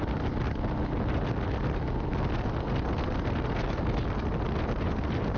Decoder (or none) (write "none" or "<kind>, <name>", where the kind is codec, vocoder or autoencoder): none